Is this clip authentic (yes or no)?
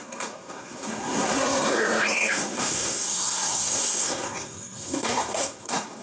no